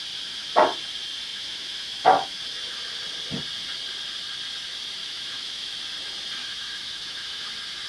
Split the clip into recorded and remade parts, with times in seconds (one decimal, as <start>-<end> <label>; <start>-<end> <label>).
0.0-1.3 recorded; 1.3-2.4 remade; 2.4-5.0 recorded; 5.0-5.7 remade; 5.7-6.4 recorded; 6.4-7.5 remade; 7.5-7.9 recorded